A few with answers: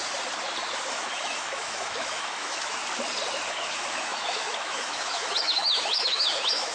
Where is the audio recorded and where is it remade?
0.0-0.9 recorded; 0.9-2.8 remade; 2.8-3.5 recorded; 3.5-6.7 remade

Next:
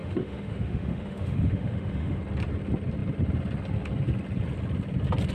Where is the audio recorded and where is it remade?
0.0-2.2 remade; 2.2-5.3 recorded

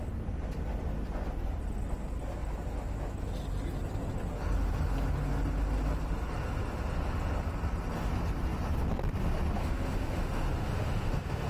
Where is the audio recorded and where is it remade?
0.0-9.6 recorded; 9.6-11.5 remade

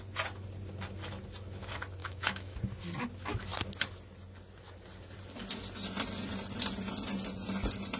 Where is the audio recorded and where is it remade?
0.0-2.0 recorded; 2.0-2.6 remade; 2.6-8.0 recorded

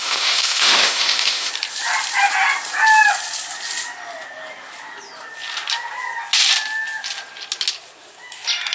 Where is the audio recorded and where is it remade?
0.0-1.5 remade; 1.5-8.7 recorded

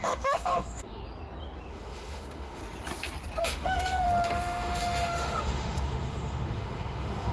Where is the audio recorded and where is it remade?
0.0-1.0 remade; 1.0-1.7 recorded; 1.7-2.6 remade; 2.6-3.4 recorded; 3.4-7.3 remade

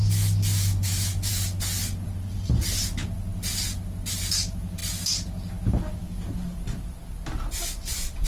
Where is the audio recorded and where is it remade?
0.0-1.3 remade; 1.3-8.3 recorded